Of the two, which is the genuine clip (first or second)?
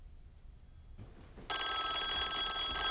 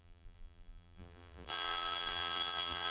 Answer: first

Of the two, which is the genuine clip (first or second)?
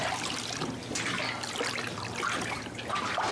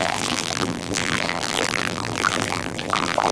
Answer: first